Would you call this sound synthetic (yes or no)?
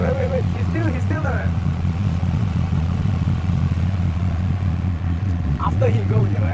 yes